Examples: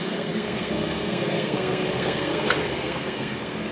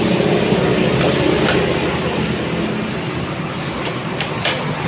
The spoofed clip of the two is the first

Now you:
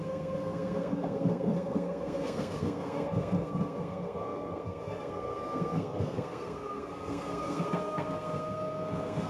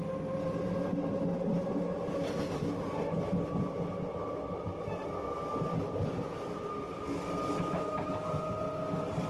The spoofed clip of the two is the first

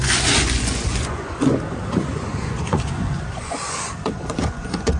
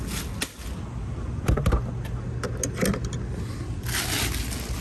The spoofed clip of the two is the first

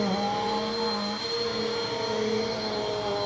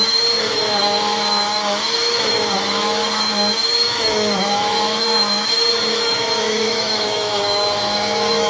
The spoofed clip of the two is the second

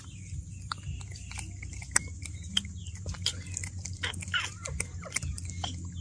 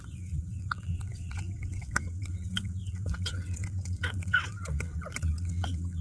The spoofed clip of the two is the second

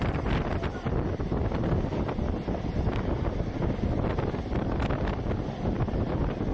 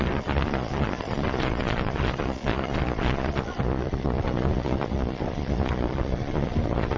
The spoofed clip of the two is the second